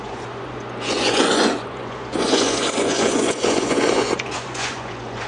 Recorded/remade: remade